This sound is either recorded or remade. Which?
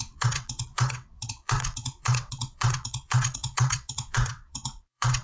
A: remade